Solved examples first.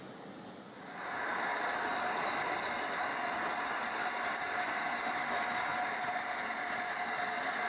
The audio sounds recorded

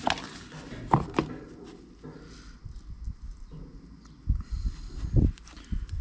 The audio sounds recorded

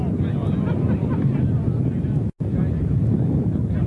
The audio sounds recorded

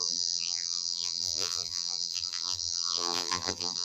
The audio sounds remade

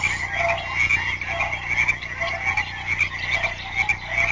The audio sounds recorded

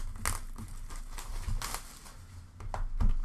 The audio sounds recorded